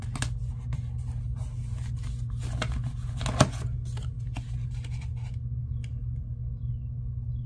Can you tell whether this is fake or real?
real